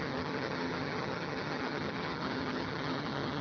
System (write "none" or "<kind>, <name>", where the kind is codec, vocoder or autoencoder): vocoder, HiFi-GAN